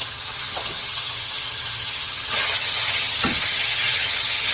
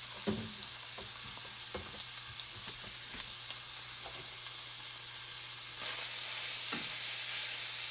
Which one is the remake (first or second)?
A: first